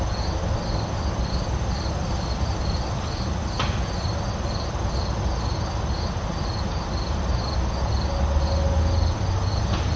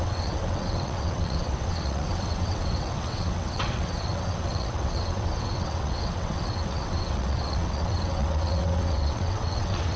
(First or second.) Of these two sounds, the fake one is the second